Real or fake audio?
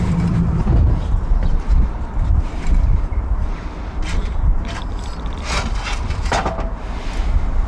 real